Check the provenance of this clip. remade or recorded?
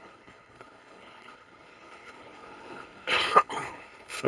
remade